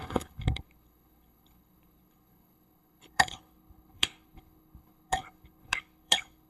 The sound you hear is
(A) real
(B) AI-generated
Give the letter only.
B